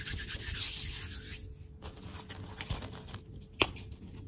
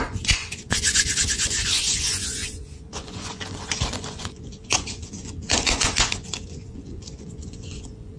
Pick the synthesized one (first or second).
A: second